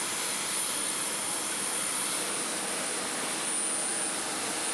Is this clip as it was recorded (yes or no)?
yes